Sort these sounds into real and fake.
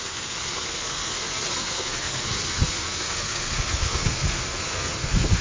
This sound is fake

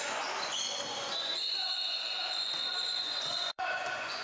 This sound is fake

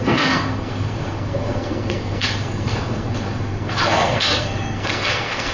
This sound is fake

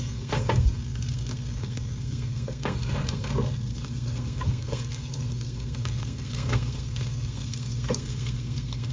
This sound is fake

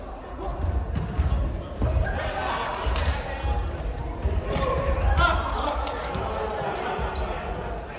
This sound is real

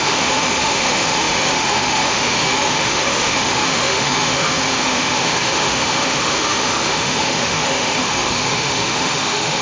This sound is fake